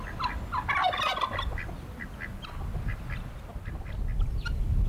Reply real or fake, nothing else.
real